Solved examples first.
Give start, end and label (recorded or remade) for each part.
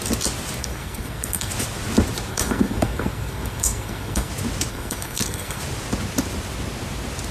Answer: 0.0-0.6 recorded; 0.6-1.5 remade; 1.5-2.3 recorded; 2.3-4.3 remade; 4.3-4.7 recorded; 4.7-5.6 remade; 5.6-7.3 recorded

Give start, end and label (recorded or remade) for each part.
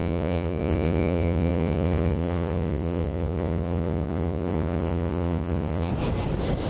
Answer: 0.0-5.9 remade; 5.9-6.7 recorded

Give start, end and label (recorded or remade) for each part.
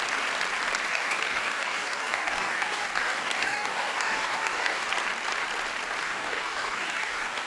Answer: 0.0-0.9 recorded; 0.9-4.9 remade; 4.9-6.0 recorded; 6.0-7.5 remade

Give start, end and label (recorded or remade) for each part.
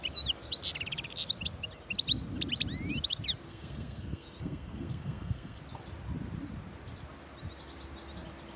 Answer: 0.0-3.5 recorded; 3.5-5.6 remade; 5.6-8.6 recorded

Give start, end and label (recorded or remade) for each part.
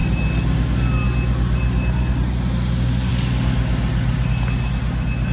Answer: 0.0-5.3 recorded